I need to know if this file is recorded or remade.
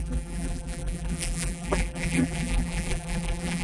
remade